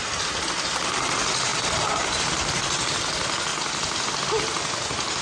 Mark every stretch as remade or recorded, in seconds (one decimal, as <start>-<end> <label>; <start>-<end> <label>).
0.0-1.5 recorded; 1.5-2.2 remade; 2.2-5.2 recorded